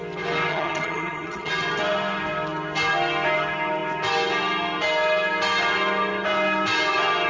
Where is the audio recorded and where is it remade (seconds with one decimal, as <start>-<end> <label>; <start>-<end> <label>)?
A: 0.0-0.5 recorded; 0.5-1.5 remade; 1.5-7.3 recorded